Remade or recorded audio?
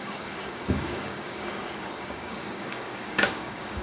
remade